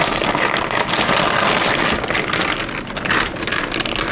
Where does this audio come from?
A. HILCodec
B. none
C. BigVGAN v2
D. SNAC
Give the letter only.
B